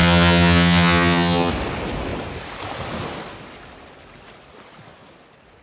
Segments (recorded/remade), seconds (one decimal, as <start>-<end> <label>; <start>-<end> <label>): 0.0-1.5 remade; 1.5-5.6 recorded